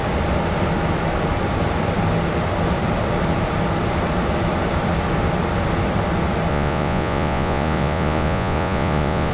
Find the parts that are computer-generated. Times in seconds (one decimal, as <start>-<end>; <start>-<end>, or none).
6.5-9.3